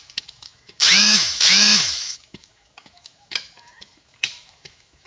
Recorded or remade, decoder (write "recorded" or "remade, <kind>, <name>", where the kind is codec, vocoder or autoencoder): remade, autoencoder, DAC-VAE